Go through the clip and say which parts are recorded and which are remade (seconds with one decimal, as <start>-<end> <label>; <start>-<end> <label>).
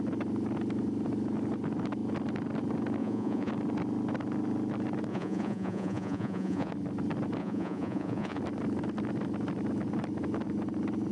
0.0-3.0 recorded; 3.0-3.5 remade; 3.5-5.1 recorded; 5.1-6.7 remade; 6.7-7.4 recorded; 7.4-8.4 remade; 8.4-11.1 recorded